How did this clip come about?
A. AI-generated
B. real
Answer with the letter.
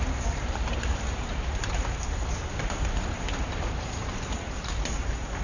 A